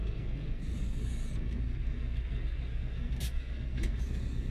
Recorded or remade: remade